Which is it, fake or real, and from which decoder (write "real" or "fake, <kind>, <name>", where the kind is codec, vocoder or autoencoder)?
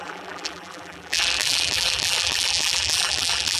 fake, vocoder, BigVGAN v2